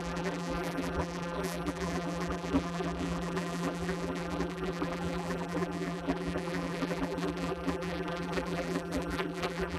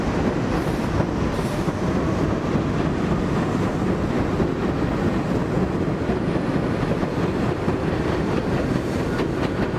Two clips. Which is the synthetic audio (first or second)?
first